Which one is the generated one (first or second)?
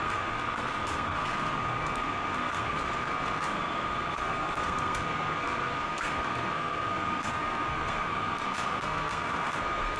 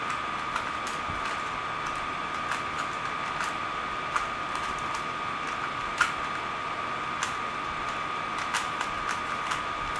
first